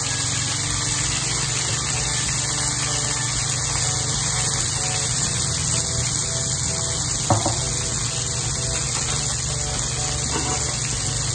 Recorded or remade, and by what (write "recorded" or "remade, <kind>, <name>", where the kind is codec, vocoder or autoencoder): recorded